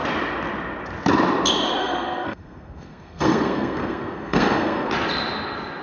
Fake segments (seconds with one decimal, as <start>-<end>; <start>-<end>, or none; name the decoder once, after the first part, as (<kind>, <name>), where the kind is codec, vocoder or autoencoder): 1.8-4.9 (codec, SNAC)